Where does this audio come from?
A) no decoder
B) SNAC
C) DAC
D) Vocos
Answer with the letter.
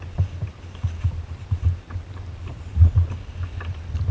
A